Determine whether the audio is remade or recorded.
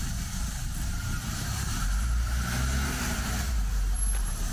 remade